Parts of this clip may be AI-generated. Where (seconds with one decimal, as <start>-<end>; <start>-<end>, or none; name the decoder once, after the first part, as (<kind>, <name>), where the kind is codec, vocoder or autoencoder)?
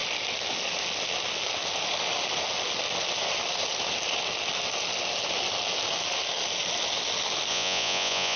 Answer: 7.5-8.4 (vocoder, Vocos)